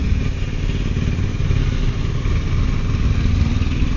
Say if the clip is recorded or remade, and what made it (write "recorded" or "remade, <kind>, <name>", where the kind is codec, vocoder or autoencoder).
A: recorded